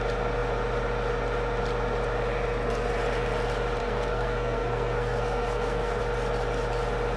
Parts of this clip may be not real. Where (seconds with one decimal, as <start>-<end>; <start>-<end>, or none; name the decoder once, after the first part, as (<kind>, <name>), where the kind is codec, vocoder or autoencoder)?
3.8-6.0 (codec, SNAC)